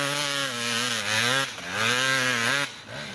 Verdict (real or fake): real